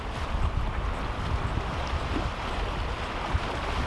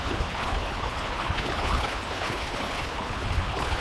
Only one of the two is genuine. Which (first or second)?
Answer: first